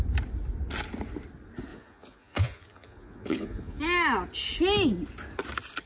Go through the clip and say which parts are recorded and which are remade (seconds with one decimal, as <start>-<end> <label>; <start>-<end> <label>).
0.0-1.7 recorded; 1.7-3.8 remade; 3.8-5.9 recorded